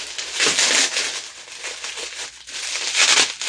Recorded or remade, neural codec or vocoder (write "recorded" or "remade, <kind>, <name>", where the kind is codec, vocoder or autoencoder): recorded